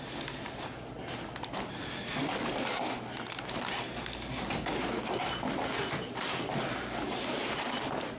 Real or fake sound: real